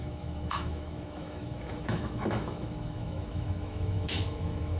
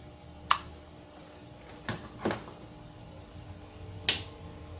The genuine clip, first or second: second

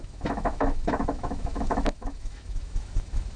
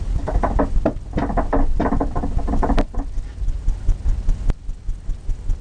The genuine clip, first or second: second